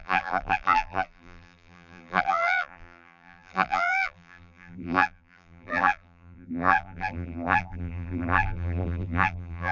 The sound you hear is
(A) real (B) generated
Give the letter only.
B